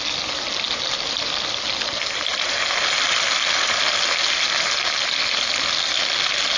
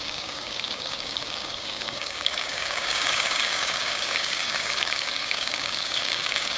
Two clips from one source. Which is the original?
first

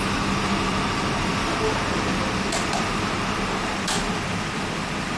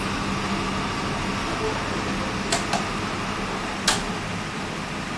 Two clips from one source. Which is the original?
second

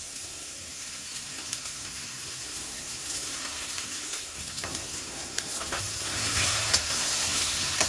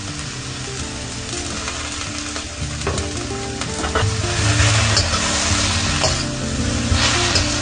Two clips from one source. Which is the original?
second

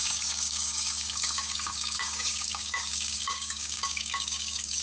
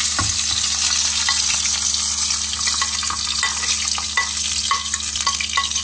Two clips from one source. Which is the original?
second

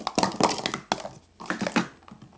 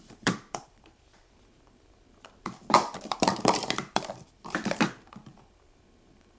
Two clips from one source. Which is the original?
first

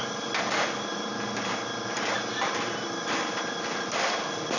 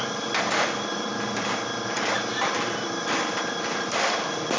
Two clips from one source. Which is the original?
first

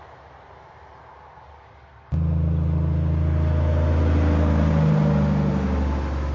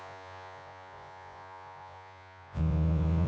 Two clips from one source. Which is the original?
first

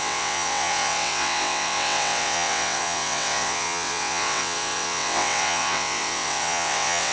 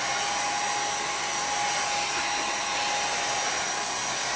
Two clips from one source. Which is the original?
second